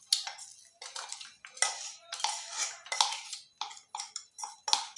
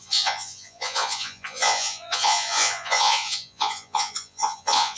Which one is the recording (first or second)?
first